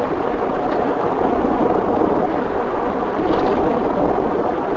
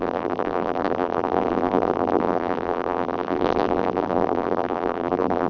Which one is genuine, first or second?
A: first